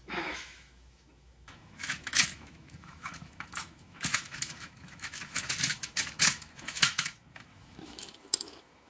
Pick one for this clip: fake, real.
fake